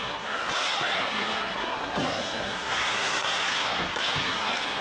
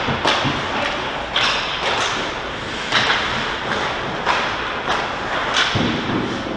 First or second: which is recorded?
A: second